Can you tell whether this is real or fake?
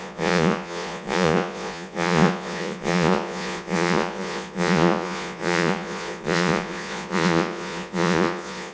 fake